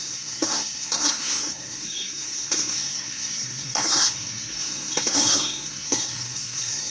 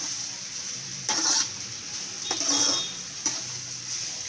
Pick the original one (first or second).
second